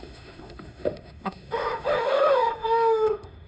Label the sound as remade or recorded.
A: remade